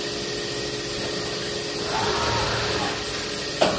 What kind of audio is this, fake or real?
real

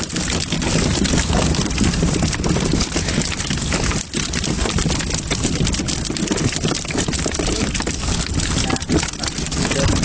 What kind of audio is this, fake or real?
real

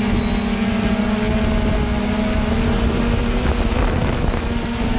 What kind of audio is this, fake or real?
real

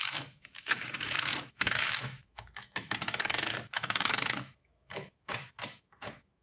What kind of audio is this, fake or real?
fake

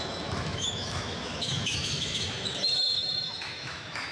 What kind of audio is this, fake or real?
fake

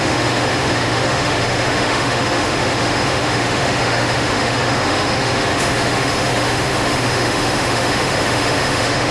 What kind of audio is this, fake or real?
fake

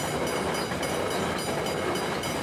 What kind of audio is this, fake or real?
real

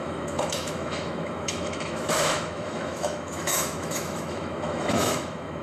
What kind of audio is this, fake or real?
fake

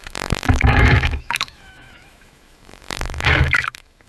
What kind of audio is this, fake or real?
fake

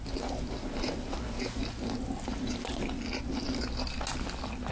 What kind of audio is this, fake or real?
real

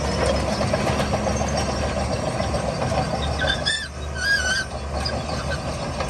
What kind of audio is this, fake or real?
real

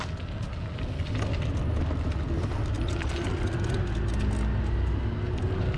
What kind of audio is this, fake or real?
real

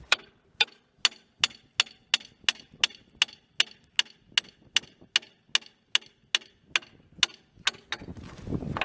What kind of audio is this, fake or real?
real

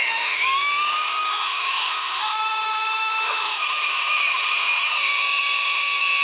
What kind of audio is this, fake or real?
fake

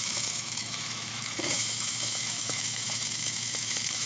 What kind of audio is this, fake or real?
fake